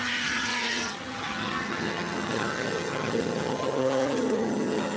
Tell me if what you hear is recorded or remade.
remade